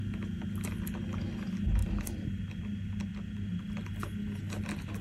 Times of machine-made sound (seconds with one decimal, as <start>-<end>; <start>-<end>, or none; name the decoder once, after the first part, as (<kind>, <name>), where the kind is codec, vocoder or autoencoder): none